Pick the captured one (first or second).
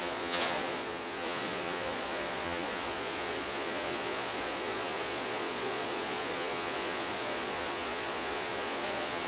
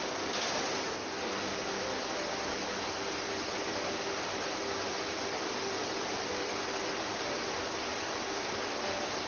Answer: second